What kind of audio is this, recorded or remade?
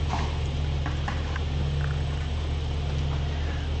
recorded